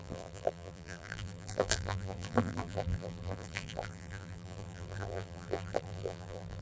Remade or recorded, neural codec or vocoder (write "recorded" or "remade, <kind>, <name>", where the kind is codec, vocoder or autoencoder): remade, vocoder, BigVGAN v2